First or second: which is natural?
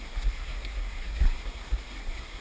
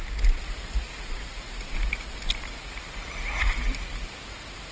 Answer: second